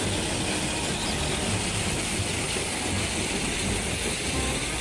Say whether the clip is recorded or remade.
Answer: recorded